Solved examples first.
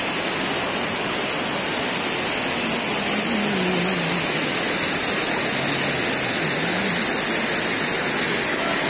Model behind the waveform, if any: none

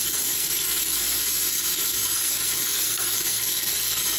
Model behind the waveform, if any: codec, SNAC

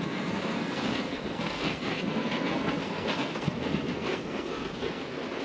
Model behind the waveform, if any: codec, SNAC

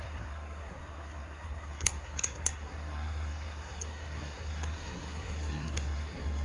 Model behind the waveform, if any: codec, SNAC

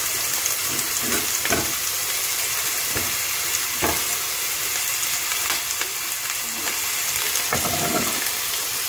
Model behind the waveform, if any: none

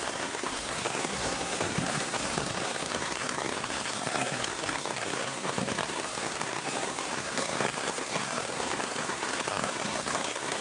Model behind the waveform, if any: codec, SNAC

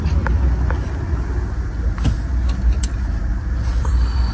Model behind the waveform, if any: none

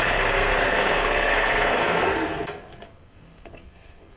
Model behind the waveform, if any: codec, SNAC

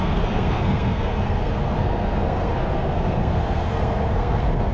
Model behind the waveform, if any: codec, SNAC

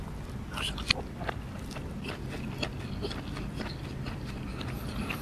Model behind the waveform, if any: none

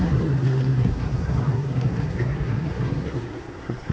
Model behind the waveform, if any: codec, SNAC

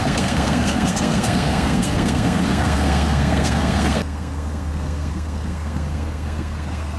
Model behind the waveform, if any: codec, SNAC